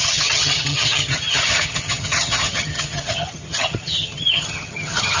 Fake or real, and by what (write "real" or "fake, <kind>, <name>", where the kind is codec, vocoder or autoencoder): fake, vocoder, HiFi-GAN